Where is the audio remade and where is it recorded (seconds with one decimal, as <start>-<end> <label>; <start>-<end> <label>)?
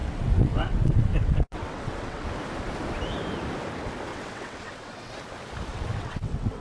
0.0-2.3 remade; 2.3-4.1 recorded; 4.1-5.1 remade; 5.1-5.7 recorded; 5.7-6.6 remade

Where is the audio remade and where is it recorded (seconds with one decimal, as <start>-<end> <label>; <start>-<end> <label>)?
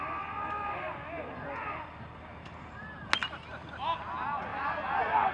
0.0-5.3 recorded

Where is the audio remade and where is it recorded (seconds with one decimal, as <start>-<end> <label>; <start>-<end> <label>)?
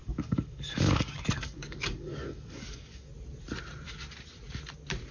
0.0-3.1 remade; 3.1-5.1 recorded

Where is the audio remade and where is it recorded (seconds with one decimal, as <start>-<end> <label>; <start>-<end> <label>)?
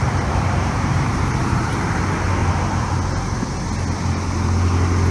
0.0-1.7 remade; 1.7-2.4 recorded; 2.4-2.9 remade; 2.9-5.1 recorded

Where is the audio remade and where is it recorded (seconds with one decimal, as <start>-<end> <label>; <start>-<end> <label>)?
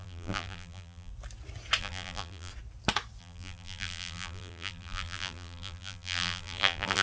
0.0-1.1 remade; 1.1-1.8 recorded; 1.8-2.5 remade; 2.5-3.2 recorded; 3.2-7.0 remade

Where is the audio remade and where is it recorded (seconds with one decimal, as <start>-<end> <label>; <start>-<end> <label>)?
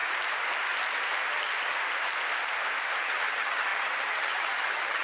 0.0-3.0 recorded; 3.0-5.0 remade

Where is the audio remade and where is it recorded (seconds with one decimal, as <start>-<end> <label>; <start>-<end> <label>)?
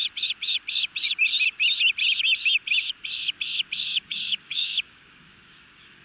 0.0-3.9 recorded; 3.9-6.0 remade